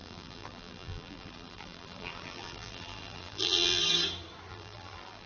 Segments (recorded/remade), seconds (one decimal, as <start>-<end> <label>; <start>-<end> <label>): 0.0-3.8 remade; 3.8-4.5 recorded; 4.5-5.3 remade